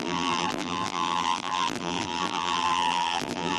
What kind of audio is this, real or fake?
fake